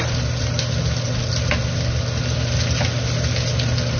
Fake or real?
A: real